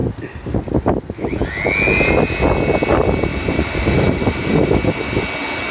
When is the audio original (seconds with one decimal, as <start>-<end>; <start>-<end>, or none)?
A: 0.0-3.3; 4.9-5.7